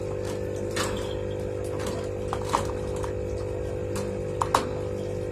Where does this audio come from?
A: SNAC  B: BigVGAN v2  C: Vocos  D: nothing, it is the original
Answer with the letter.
D